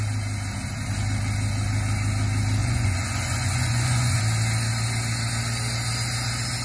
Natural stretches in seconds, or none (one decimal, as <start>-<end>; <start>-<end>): 0.0-2.6; 4.2-6.6